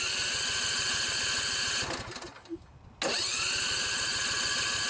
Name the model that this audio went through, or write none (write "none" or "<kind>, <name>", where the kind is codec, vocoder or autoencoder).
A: none